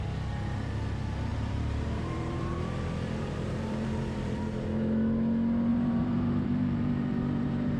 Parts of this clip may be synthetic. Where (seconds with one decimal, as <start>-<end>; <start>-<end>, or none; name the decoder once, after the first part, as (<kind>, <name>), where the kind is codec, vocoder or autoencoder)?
1.3-4.4 (vocoder, BigVGAN v2); 5.7-7.8